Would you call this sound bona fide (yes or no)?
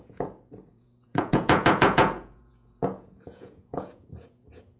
no